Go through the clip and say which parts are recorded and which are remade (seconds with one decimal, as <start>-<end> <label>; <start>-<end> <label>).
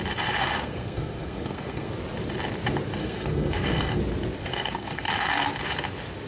0.0-0.4 recorded; 0.4-1.9 remade; 1.9-3.0 recorded; 3.0-4.0 remade; 4.0-4.4 recorded; 4.4-5.1 remade; 5.1-6.3 recorded